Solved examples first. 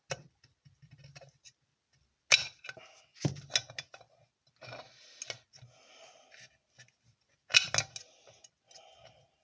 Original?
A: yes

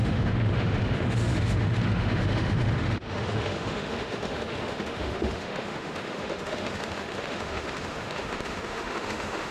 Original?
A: no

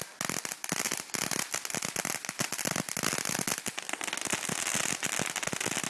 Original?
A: yes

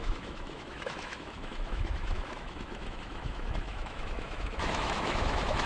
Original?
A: no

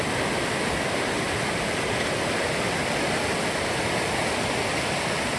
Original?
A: yes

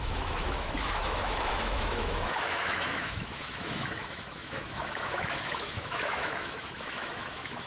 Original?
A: no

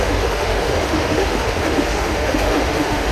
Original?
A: no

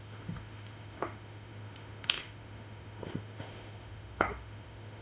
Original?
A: no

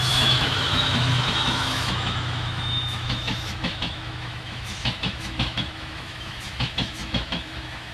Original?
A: no